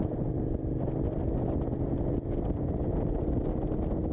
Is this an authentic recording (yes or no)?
yes